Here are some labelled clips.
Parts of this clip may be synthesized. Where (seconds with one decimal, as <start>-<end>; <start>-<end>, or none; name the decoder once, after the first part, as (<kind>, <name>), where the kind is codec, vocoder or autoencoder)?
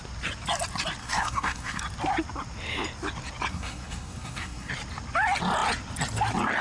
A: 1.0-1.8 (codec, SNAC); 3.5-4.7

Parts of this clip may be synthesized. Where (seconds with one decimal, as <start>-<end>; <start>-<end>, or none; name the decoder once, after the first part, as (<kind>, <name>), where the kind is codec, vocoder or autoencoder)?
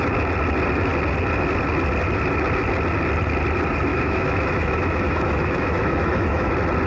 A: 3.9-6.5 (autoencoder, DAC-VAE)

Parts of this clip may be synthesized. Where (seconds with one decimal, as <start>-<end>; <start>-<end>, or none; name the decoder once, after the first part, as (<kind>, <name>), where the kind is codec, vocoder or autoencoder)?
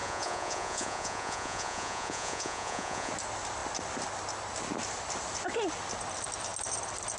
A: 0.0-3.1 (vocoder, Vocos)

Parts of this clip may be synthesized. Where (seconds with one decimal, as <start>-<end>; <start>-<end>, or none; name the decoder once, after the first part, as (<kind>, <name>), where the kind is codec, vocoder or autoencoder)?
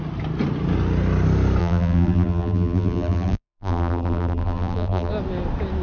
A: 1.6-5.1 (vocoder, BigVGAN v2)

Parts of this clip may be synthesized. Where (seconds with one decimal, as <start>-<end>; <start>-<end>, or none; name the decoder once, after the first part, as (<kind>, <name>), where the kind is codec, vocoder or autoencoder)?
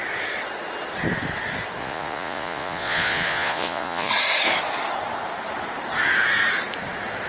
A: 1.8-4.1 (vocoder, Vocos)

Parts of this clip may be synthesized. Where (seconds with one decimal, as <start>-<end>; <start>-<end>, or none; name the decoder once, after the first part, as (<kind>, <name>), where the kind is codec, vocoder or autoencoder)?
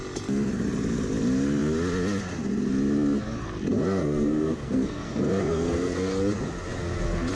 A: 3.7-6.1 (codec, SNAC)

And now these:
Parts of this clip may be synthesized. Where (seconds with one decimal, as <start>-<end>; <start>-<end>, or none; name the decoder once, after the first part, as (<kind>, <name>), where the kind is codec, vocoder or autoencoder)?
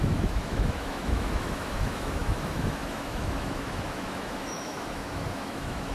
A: 0.0-5.9 (autoencoder, DAC-VAE)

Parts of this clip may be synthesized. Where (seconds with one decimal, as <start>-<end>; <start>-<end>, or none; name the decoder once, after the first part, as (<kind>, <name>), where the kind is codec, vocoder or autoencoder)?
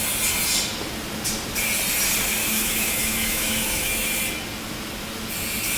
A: 2.4-4.2 (autoencoder, DAC-VAE)